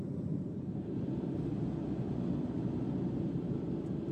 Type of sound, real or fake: fake